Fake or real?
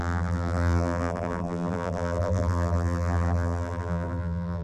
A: fake